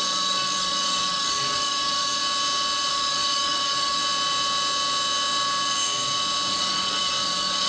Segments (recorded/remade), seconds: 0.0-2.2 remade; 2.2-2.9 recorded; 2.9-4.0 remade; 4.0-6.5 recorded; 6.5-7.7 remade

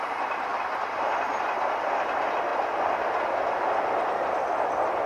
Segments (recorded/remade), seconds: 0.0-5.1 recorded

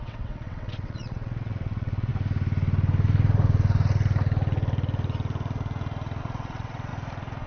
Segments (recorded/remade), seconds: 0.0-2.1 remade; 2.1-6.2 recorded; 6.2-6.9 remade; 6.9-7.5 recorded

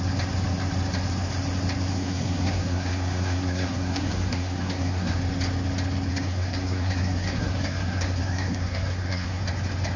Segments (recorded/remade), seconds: 0.0-1.9 recorded; 1.9-5.2 remade; 5.2-6.1 recorded; 6.1-9.4 remade; 9.4-10.0 recorded